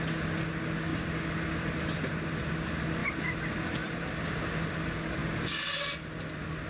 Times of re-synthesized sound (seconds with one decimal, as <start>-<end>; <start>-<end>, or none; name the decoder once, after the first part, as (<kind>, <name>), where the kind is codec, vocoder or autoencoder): 3.0-4.4 (vocoder, BigVGAN v2)